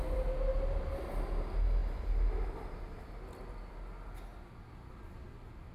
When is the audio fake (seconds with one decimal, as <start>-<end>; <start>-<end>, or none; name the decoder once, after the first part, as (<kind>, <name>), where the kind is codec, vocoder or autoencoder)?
none